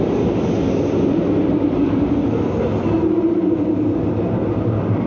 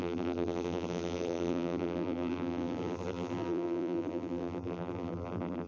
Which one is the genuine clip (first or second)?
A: first